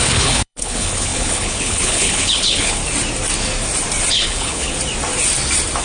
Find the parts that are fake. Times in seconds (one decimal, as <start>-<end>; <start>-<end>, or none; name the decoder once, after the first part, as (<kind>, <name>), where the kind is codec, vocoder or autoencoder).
0.0-2.8 (codec, HILCodec); 4.1-4.8